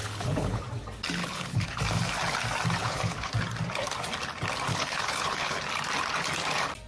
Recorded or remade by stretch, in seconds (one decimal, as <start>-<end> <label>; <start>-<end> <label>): 0.0-0.6 remade; 0.6-1.2 recorded; 1.2-1.8 remade; 1.8-2.8 recorded; 2.8-3.3 remade; 3.3-4.7 recorded; 4.7-5.6 remade; 5.6-6.9 recorded